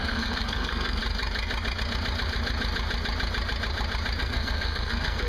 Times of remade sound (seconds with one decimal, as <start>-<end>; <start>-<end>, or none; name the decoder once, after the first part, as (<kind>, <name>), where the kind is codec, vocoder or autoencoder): 0.0-1.0 (codec, SNAC); 4.2-5.3